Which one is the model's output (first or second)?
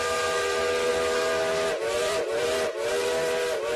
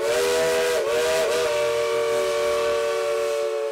first